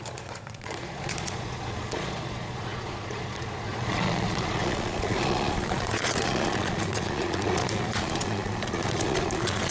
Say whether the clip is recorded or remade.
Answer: remade